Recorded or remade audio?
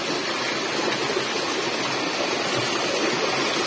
recorded